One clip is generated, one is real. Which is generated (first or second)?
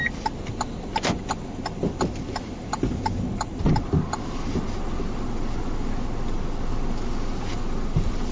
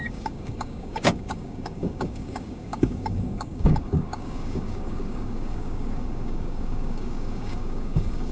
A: second